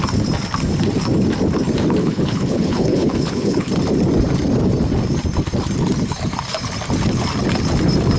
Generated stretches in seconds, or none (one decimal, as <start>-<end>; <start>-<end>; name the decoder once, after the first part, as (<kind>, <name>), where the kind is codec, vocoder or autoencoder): 2.0-3.7 (codec, HILCodec)